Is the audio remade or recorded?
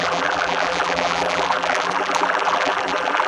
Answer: remade